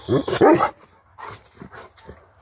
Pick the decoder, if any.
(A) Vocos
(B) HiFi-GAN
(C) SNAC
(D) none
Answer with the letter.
D